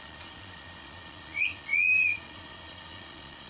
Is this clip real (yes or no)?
no